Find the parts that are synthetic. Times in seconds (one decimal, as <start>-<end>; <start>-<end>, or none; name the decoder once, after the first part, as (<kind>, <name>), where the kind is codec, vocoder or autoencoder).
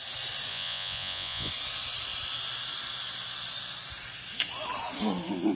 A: 0.5-1.5 (vocoder, Vocos)